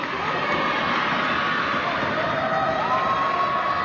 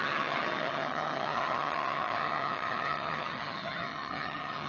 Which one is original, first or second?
first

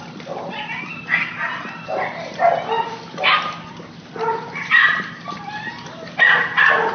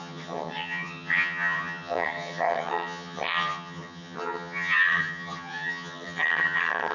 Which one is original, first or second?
first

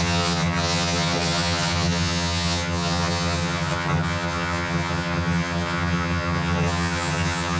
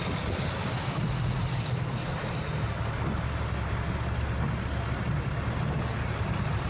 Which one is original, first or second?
second